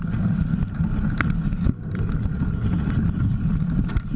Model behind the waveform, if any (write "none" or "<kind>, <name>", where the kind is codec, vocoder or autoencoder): none